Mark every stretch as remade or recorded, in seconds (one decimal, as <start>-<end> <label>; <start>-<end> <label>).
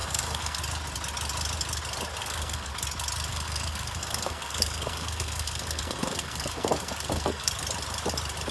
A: 0.0-0.6 remade; 0.6-2.2 recorded; 2.2-2.7 remade; 2.7-3.3 recorded; 3.3-7.5 remade; 7.5-8.5 recorded